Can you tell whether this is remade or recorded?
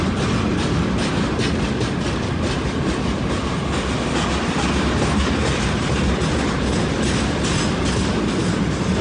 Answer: recorded